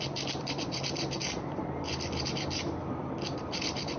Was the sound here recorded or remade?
remade